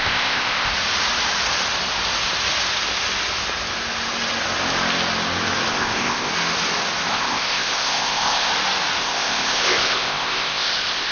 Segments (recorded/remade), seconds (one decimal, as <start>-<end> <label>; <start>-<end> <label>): 0.0-0.7 remade; 0.7-5.7 recorded; 5.7-6.3 remade; 6.3-7.1 recorded; 7.1-8.5 remade; 8.5-9.0 recorded; 9.0-11.1 remade